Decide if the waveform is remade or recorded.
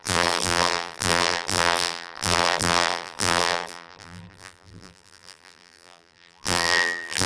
remade